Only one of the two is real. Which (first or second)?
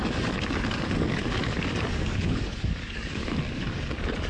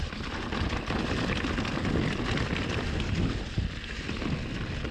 second